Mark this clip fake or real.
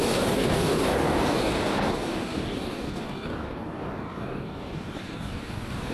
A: fake